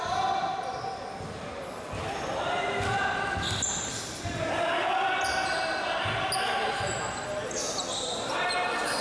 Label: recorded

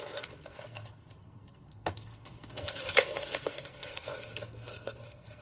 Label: remade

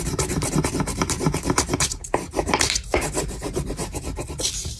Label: remade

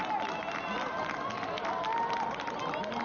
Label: recorded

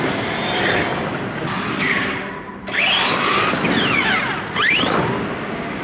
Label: recorded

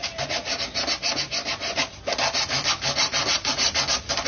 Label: recorded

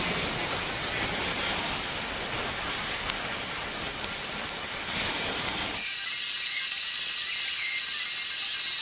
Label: recorded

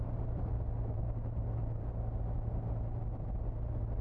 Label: recorded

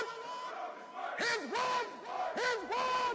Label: recorded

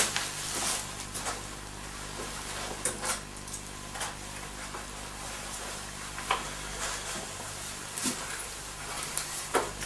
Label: recorded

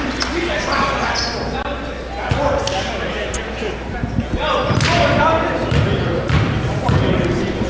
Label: recorded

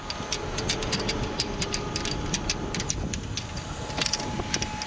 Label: recorded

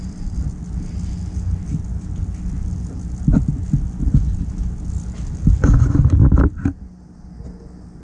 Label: recorded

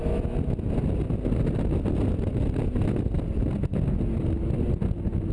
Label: recorded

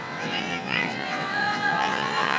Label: remade